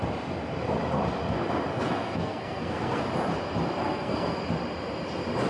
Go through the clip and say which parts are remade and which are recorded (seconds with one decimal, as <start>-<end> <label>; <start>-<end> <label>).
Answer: 0.0-1.7 recorded; 1.7-3.0 remade; 3.0-3.8 recorded; 3.8-4.4 remade; 4.4-5.5 recorded